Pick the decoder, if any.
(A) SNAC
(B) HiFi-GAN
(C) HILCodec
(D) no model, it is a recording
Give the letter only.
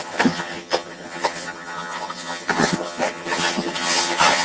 B